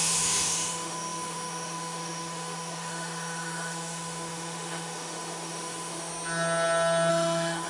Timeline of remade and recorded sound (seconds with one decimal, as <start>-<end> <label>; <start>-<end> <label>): 0.0-6.1 remade; 6.1-7.1 recorded; 7.1-7.7 remade